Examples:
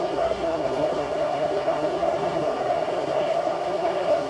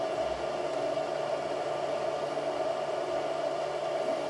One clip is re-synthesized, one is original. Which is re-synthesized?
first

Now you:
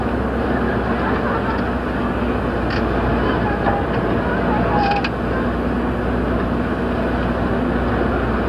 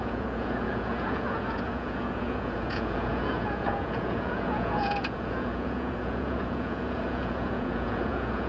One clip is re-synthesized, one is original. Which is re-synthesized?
second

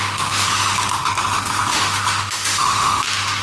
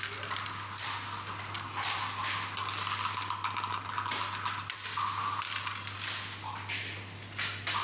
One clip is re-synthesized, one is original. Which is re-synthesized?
first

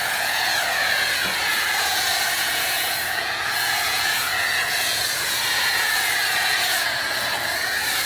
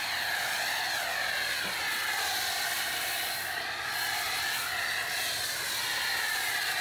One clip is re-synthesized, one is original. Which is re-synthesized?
first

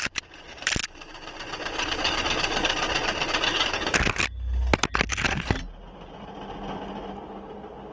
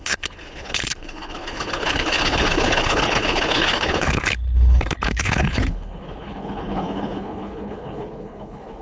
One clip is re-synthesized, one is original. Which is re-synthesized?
second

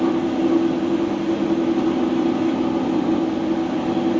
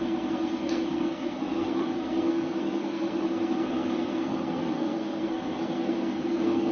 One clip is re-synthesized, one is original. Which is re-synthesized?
second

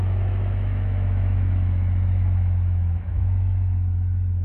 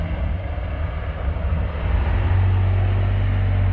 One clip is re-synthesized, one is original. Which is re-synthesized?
first